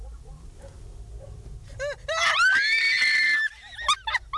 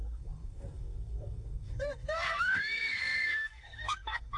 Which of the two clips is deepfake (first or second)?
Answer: second